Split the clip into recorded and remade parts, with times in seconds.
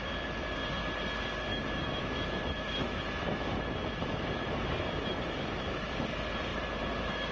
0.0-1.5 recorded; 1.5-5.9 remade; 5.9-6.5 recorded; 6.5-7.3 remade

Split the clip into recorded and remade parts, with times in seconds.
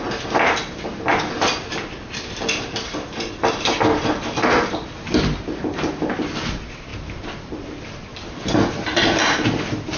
0.0-10.0 recorded